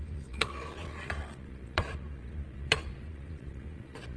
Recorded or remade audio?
remade